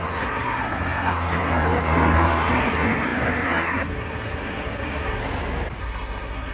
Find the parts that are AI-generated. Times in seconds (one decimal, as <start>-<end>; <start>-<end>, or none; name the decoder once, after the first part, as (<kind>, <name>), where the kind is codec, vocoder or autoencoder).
0.0-5.2 (codec, SNAC); 5.8-6.5